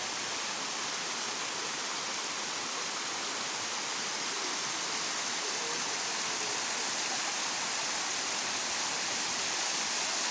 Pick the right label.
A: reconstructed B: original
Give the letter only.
B